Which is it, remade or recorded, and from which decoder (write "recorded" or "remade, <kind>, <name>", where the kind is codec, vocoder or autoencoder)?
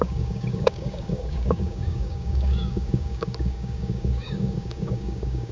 remade, codec, DAC